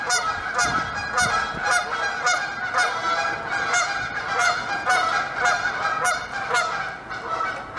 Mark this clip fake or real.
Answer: real